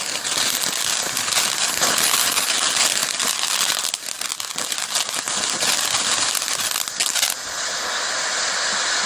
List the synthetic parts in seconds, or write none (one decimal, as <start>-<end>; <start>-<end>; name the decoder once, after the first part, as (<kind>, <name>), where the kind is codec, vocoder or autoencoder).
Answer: none